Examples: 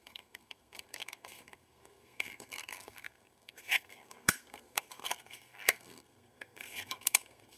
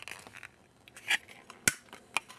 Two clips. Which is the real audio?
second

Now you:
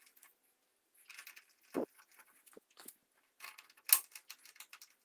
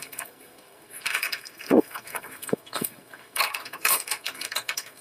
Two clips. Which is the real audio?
first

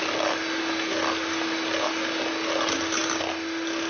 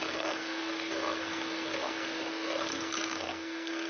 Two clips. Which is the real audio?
first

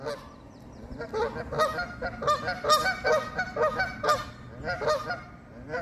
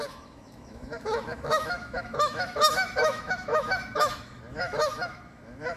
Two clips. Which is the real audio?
first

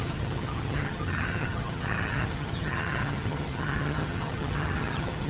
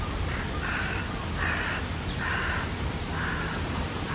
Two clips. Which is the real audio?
second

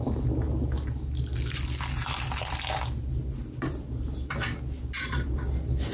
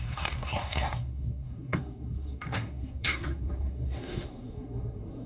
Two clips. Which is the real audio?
first